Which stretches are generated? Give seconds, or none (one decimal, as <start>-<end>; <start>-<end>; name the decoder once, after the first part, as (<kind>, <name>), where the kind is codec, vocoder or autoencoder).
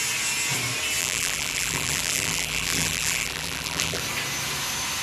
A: 1.0-4.0 (vocoder, BigVGAN v2)